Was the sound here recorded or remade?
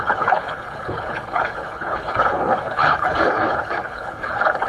remade